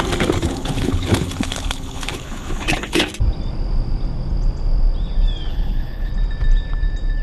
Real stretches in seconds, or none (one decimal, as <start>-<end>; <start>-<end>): 0.0-0.4; 3.1-5.5; 6.1-7.2